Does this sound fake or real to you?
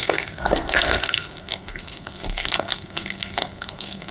fake